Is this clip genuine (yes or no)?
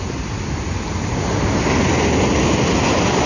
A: yes